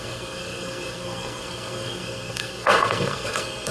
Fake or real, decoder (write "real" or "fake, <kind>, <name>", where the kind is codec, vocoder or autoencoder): fake, codec, SNAC